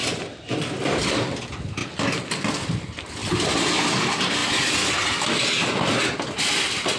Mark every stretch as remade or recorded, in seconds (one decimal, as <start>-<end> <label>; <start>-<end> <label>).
0.0-0.7 remade; 0.7-1.8 recorded; 1.8-2.8 remade; 2.8-7.0 recorded